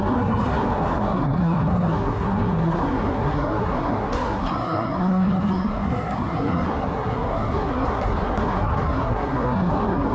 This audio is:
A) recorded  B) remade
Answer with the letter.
B